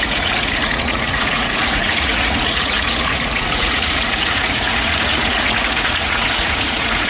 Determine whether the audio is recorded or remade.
remade